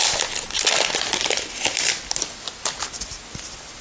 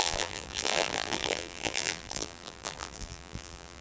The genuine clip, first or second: first